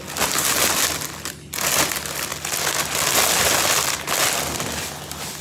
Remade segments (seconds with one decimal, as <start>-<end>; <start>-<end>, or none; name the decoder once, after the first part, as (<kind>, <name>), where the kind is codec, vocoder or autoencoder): none